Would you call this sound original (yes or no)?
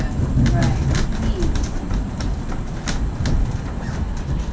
yes